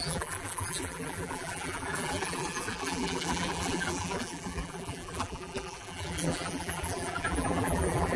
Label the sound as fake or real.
fake